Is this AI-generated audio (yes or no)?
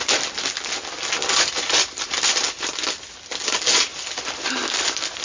yes